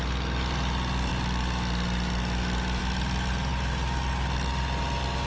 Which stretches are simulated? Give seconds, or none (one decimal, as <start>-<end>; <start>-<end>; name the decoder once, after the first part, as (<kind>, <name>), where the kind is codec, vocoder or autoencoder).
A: none